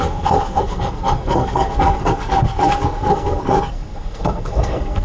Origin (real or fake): fake